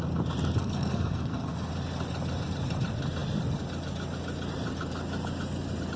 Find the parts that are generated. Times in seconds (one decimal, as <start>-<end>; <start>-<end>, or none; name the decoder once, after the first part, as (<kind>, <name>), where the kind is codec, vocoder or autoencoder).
0.6-1.7 (codec, SNAC)